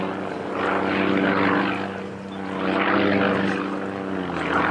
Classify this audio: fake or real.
real